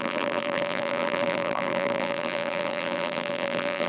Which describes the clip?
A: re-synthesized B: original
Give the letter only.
A